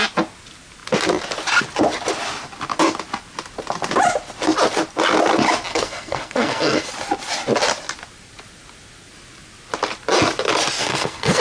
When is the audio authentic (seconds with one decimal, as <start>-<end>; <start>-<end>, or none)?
0.0-5.7; 6.9-10.8